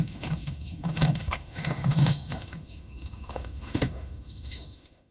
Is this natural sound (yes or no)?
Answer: no